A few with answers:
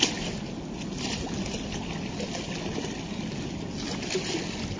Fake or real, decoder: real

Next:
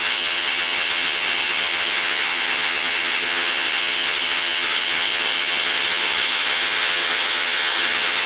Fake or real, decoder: fake, vocoder, HiFi-GAN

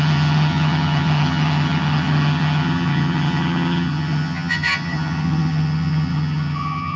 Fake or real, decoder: fake, vocoder, HiFi-GAN